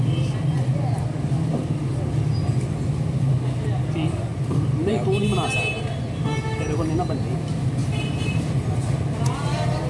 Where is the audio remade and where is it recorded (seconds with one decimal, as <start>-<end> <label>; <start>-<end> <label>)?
0.0-7.8 recorded; 7.8-8.5 remade; 8.5-9.9 recorded